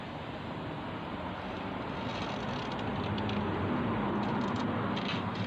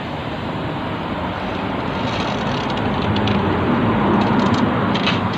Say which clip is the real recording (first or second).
first